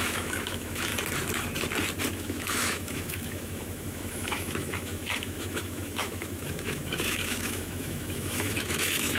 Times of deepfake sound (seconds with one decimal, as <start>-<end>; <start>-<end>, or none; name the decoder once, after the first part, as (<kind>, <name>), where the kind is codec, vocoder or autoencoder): 0.0-0.9 (autoencoder, DAC-VAE); 2.1-9.2